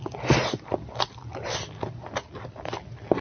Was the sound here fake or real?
real